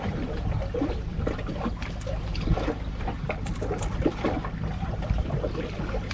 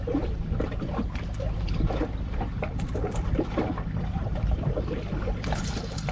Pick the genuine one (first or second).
first